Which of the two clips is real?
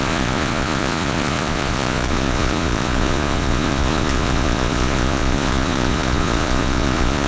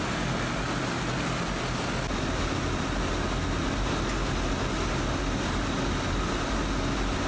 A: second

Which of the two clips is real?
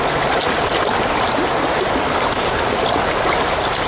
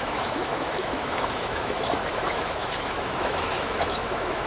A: first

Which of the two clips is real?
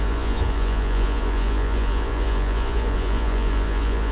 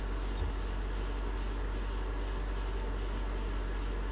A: second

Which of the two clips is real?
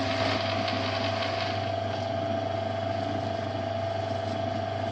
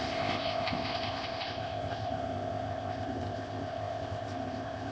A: first